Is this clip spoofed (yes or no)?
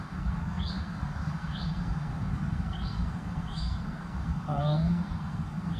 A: yes